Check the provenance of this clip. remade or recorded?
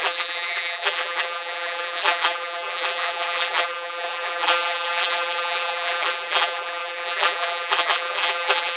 remade